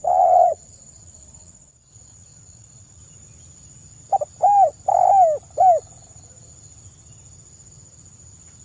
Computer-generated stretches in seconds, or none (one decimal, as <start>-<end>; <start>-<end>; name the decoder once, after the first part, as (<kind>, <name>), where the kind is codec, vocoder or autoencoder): 0.0-3.0 (vocoder, Vocos)